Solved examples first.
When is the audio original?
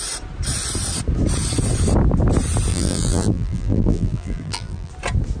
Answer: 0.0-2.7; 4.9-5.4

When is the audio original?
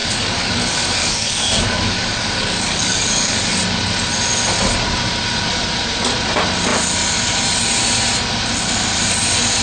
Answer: 3.4-9.6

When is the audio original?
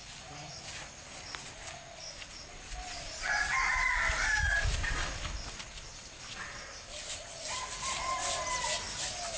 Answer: 0.0-9.4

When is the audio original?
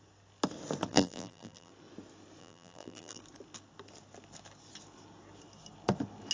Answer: 0.0-0.9; 1.7-2.4; 3.2-6.3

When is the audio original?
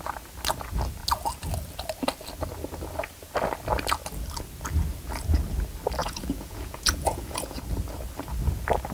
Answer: 0.0-6.0; 7.6-8.9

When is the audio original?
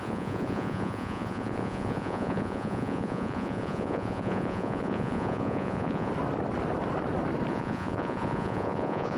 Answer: 6.1-7.5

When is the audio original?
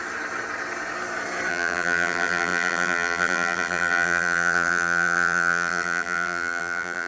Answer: 0.0-1.5